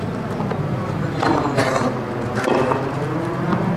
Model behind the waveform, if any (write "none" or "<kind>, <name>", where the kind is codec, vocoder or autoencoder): none